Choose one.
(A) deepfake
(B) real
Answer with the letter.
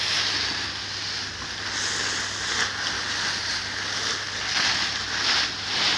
B